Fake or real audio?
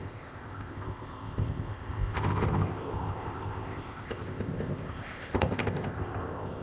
fake